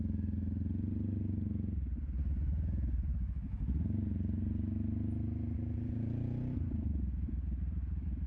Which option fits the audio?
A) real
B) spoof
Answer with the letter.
A